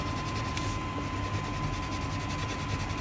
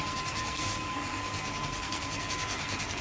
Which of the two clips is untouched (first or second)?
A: first